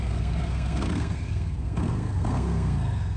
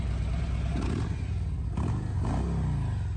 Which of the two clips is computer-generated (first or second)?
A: first